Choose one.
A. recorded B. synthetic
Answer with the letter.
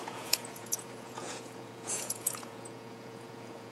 B